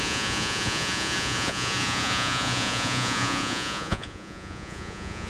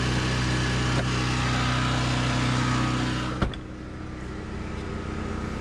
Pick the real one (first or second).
second